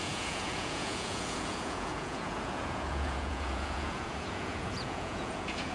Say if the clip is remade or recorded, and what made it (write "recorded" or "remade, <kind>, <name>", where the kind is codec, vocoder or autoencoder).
remade, vocoder, Vocos